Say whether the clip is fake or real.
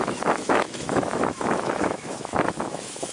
fake